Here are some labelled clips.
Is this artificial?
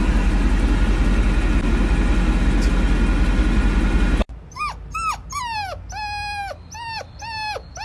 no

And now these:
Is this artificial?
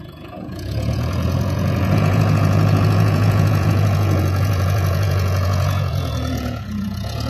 yes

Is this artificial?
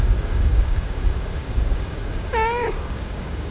yes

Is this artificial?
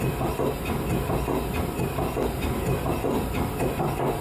no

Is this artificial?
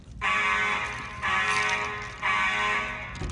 no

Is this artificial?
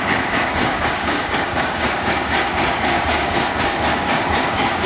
yes